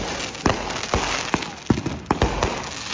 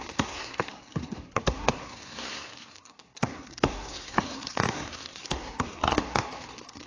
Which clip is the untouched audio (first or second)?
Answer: first